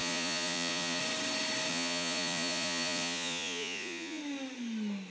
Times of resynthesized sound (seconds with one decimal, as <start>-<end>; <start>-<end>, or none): 0.0-1.0; 1.7-4.2